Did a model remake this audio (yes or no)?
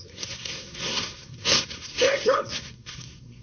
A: yes